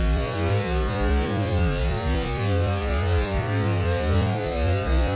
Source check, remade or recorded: remade